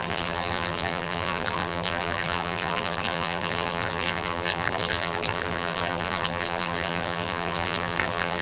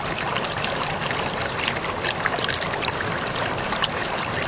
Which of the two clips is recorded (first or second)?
second